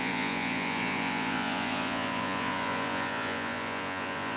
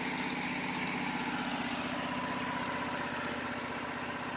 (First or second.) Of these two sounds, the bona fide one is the second